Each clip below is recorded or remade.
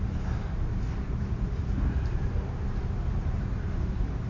remade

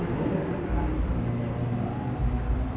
recorded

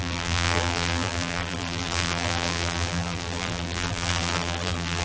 remade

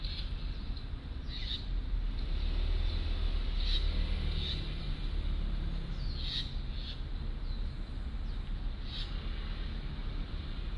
recorded